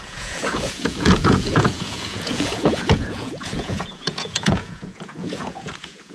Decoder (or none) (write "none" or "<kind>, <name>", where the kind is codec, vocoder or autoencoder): vocoder, Vocos